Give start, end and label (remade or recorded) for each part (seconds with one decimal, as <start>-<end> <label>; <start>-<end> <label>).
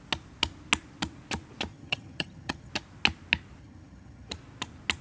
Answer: 0.0-1.7 recorded; 1.7-2.7 remade; 2.7-3.6 recorded; 3.6-4.3 remade; 4.3-5.0 recorded